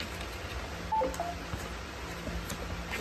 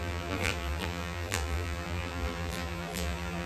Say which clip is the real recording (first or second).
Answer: first